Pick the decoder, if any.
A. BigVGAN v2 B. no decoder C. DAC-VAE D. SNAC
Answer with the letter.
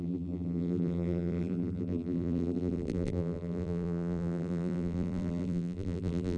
A